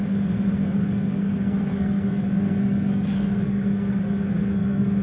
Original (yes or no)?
no